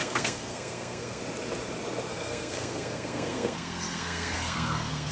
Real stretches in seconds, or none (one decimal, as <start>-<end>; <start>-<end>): 1.2-2.1